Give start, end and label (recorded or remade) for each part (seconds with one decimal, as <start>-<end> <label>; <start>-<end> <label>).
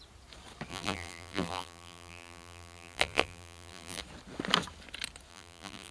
0.0-0.7 recorded; 0.7-4.0 remade; 4.0-5.3 recorded; 5.3-5.9 remade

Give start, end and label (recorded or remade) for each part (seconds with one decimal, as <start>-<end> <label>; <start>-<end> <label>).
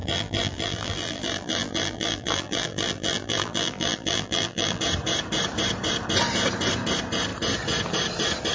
0.0-4.8 remade; 4.8-8.5 recorded